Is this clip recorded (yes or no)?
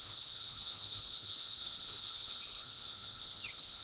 no